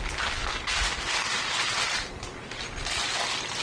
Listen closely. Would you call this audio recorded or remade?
recorded